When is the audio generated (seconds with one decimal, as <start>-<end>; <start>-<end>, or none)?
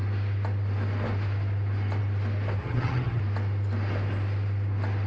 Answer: 2.6-3.2